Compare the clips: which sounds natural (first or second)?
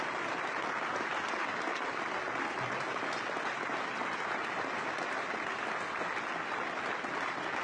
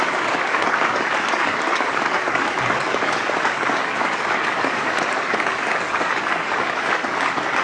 first